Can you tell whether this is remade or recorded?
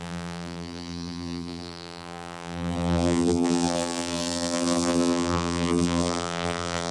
remade